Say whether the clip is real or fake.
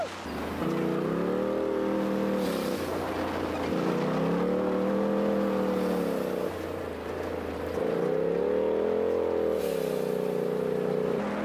real